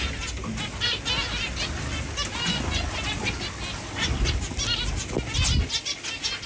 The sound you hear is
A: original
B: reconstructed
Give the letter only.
A